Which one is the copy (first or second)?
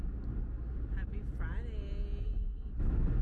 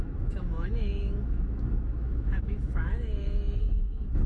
second